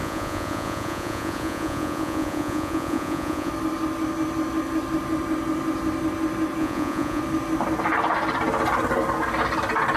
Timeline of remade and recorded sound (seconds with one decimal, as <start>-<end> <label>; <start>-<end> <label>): 0.0-3.5 remade; 3.5-6.6 recorded; 6.6-7.2 remade; 7.2-10.0 recorded

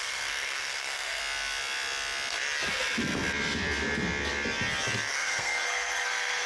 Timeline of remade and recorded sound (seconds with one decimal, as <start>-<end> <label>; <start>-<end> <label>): 0.0-1.2 remade; 1.2-5.1 recorded; 5.1-6.5 remade

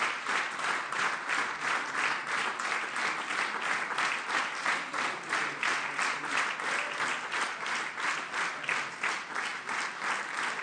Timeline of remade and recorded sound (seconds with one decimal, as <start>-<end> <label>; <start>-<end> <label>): 0.0-10.6 recorded

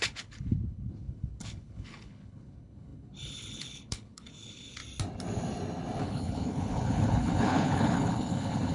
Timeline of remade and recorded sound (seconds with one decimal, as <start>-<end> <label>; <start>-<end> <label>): 0.0-4.8 remade; 4.8-6.0 recorded; 6.0-8.7 remade

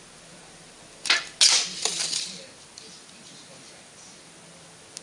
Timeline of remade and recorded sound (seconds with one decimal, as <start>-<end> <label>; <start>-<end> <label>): 0.0-5.0 recorded

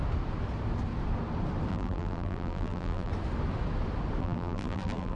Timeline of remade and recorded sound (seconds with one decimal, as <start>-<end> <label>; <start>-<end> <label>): 0.0-1.7 recorded; 1.7-3.1 remade; 3.1-4.2 recorded; 4.2-5.2 remade

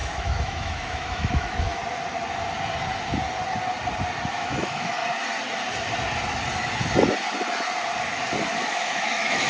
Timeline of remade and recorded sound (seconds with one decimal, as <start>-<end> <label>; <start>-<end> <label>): 0.0-1.8 remade; 1.8-4.3 recorded; 4.3-5.0 remade; 5.0-8.6 recorded; 8.6-9.5 remade